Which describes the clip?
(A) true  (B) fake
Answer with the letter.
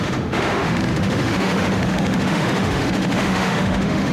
B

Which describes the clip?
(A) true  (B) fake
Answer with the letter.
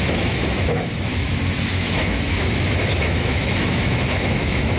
B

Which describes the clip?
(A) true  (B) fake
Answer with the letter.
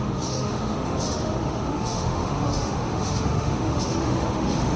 B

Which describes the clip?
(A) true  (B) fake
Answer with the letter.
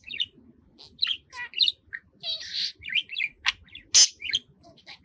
A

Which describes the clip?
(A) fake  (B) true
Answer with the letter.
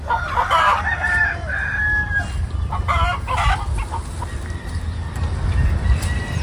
B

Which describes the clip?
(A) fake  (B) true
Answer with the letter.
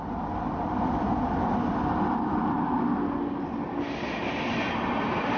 B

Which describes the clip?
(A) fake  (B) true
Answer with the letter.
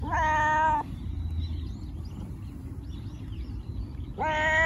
B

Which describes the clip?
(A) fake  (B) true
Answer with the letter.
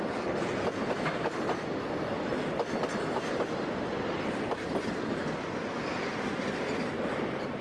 B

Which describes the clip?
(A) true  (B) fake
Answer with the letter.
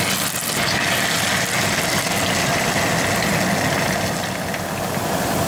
A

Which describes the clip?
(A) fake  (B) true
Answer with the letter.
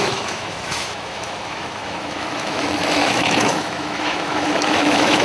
A